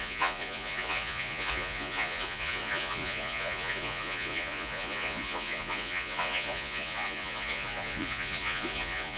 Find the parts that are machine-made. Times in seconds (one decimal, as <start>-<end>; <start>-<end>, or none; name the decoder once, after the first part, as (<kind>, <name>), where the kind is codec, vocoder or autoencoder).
0.0-9.2 (vocoder, Vocos)